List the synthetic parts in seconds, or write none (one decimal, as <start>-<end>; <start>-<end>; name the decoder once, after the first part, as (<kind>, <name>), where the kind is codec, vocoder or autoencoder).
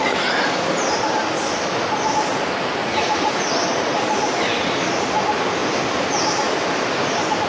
2.8-3.5 (vocoder, Vocos)